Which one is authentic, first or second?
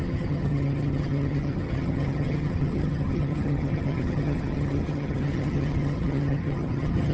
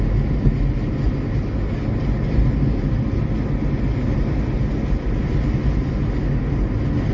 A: second